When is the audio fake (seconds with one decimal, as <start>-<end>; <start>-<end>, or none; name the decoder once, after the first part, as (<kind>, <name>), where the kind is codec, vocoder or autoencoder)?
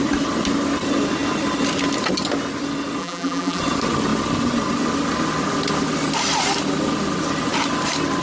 3.0-3.6 (vocoder, BigVGAN v2)